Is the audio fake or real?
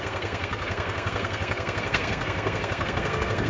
fake